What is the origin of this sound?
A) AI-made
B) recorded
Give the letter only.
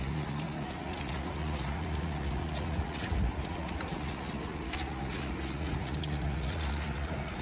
A